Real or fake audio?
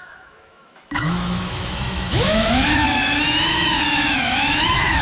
fake